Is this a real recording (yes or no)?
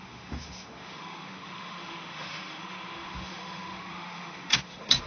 no